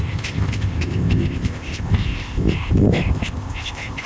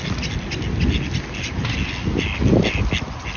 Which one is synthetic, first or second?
first